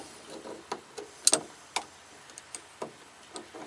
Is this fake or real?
real